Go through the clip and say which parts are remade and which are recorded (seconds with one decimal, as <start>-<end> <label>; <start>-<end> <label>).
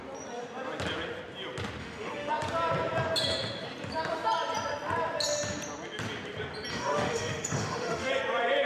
0.0-1.8 recorded; 1.8-2.3 remade; 2.3-6.7 recorded; 6.7-8.1 remade; 8.1-8.7 recorded